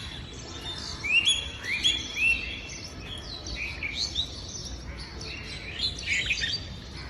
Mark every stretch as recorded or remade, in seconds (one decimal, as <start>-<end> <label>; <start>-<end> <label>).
0.0-7.1 recorded